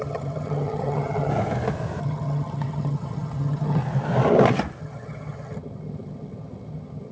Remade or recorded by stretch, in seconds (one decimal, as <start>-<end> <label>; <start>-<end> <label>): 0.0-1.3 remade; 1.3-2.0 recorded; 2.0-3.8 remade; 3.8-4.8 recorded; 4.8-7.1 remade